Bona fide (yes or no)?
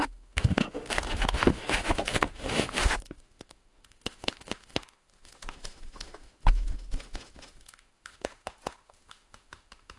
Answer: no